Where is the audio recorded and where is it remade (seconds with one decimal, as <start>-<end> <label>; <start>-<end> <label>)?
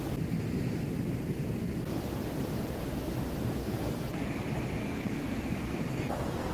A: 0.0-3.6 recorded; 3.6-4.2 remade; 4.2-4.8 recorded; 4.8-6.5 remade